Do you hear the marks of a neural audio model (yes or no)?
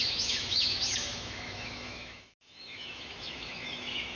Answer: yes